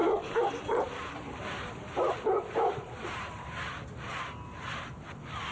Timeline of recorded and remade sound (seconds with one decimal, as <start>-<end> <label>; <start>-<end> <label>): 0.0-3.3 remade; 3.3-5.5 recorded